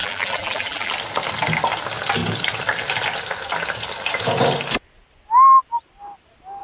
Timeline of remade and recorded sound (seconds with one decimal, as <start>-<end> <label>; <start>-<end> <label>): 0.0-0.9 remade; 0.9-6.6 recorded